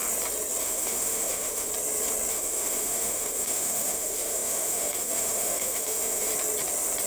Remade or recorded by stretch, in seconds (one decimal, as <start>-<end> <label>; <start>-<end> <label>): 0.0-0.6 recorded; 0.6-1.7 remade; 1.7-2.3 recorded; 2.3-6.3 remade; 6.3-7.1 recorded